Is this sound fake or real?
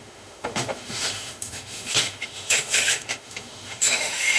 fake